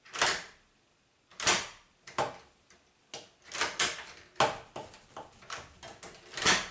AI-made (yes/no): no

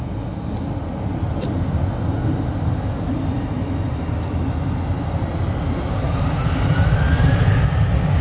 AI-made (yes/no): no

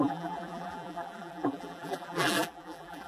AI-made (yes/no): yes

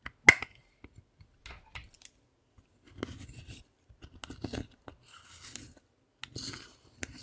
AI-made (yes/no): no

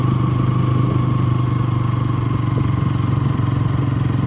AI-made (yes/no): no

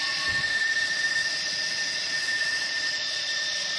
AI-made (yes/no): yes